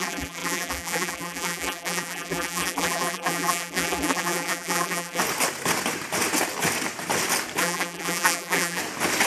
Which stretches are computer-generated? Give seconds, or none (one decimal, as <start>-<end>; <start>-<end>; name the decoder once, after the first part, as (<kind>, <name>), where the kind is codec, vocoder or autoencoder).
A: 0.0-5.2 (vocoder, BigVGAN v2); 7.6-8.8